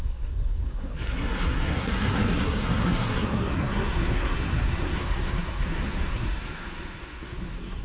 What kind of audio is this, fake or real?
fake